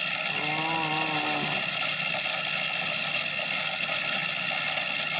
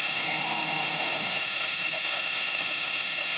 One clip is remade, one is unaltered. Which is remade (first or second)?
second